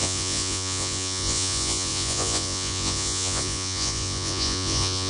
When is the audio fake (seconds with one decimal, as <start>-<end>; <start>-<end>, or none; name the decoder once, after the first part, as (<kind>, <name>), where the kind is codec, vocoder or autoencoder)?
0.0-5.1 (vocoder, Vocos)